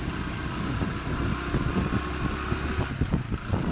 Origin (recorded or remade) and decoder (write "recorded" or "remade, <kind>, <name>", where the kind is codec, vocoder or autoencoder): recorded